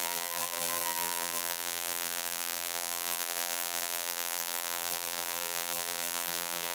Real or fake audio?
fake